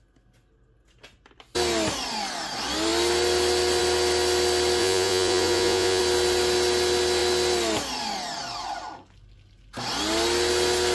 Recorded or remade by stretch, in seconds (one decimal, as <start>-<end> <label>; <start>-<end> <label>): 0.0-4.8 recorded; 4.8-6.0 remade; 6.0-10.9 recorded